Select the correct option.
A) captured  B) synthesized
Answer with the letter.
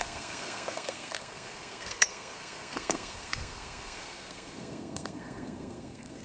B